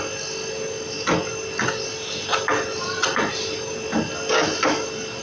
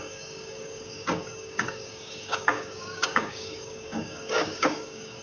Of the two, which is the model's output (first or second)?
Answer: second